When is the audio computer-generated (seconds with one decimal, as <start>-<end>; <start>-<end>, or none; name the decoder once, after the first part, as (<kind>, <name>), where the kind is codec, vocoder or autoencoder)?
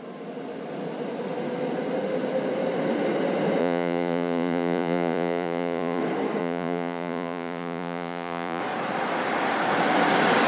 3.6-6.0 (vocoder, Vocos); 6.4-8.6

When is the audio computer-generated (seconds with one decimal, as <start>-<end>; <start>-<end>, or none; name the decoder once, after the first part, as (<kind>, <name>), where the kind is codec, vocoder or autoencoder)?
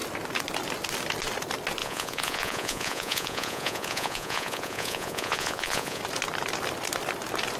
1.8-6.0 (vocoder, Vocos)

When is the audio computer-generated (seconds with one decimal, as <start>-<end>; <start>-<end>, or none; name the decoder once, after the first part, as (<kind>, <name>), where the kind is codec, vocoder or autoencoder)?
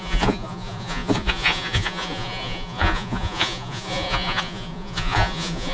0.0-5.7 (vocoder, Vocos)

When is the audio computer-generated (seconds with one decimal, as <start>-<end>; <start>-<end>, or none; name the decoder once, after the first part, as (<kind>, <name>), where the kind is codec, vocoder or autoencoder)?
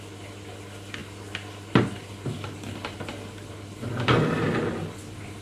none